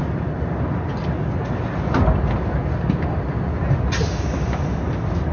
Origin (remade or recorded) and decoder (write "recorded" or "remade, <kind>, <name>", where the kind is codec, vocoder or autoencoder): recorded